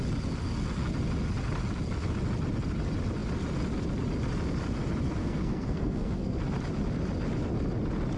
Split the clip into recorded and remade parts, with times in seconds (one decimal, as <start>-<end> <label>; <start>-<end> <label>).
0.0-5.2 recorded; 5.2-6.4 remade; 6.4-8.2 recorded